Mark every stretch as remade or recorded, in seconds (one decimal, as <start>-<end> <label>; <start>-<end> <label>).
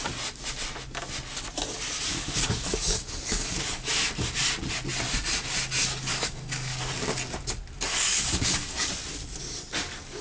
0.0-2.1 recorded; 2.1-3.9 remade; 3.9-6.1 recorded; 6.1-6.9 remade; 6.9-7.9 recorded; 7.9-8.9 remade; 8.9-10.2 recorded